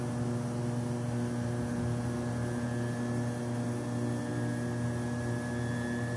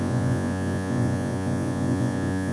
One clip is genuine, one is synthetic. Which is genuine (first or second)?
first